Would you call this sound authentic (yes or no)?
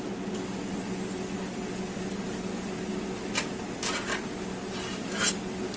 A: yes